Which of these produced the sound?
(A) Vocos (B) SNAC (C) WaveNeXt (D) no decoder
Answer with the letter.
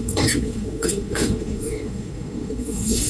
B